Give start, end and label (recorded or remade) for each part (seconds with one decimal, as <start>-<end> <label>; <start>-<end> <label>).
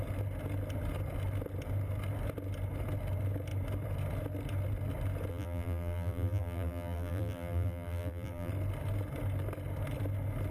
0.0-5.3 recorded; 5.3-8.5 remade; 8.5-10.5 recorded